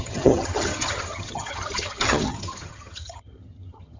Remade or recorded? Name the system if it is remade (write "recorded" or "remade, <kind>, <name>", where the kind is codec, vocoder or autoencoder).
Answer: remade, vocoder, HiFi-GAN